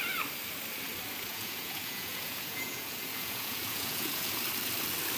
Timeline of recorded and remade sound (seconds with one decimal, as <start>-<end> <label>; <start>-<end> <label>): 0.0-1.3 recorded; 1.3-4.4 remade; 4.4-5.2 recorded